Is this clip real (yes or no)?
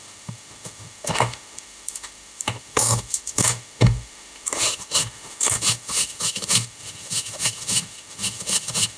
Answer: no